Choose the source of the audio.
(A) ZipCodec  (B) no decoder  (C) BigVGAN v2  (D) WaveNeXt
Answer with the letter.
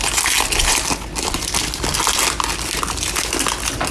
B